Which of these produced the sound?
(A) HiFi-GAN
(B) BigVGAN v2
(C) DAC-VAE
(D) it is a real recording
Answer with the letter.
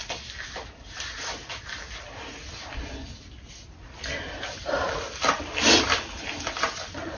D